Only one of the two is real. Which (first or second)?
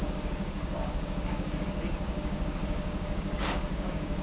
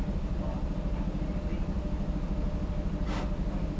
second